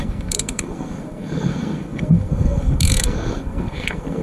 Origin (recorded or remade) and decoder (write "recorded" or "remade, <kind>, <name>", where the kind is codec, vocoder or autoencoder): remade, codec, SNAC